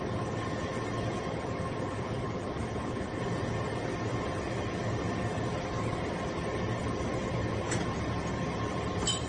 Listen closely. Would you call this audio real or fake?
real